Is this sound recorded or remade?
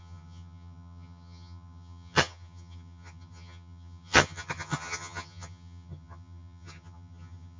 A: remade